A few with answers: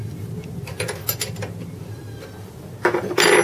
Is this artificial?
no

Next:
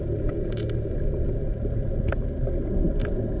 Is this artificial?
no